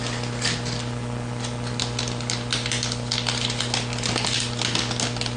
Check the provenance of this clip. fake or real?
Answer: real